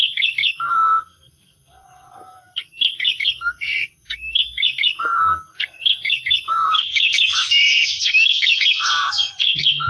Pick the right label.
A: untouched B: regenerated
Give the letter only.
B